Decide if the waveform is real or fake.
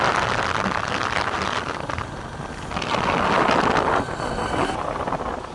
real